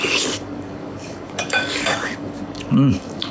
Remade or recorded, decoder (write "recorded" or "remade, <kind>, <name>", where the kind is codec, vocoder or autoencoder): remade, codec, DAC